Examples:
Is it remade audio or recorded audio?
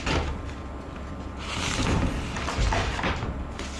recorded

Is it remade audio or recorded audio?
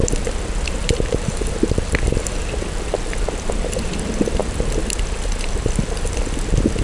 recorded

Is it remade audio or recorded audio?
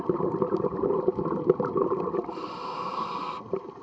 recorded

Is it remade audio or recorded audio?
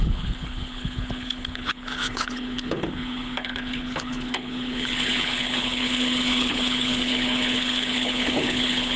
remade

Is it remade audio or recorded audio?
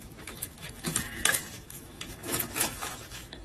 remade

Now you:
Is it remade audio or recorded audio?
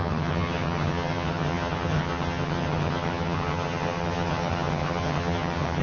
remade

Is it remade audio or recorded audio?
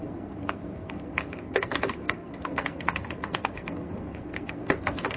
remade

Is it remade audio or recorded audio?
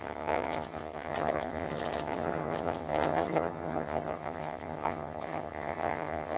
remade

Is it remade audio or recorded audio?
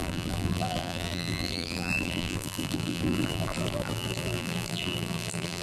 remade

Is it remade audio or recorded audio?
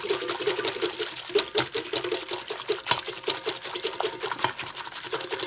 recorded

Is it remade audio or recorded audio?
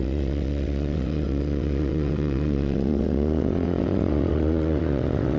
remade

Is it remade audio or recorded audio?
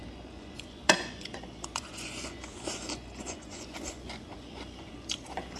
remade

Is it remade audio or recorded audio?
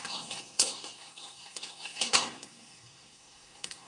remade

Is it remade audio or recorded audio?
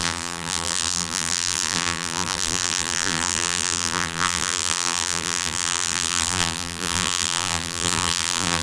remade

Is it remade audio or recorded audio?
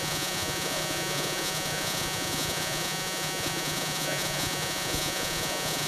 remade